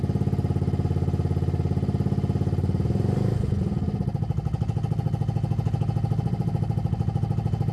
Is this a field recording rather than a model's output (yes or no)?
yes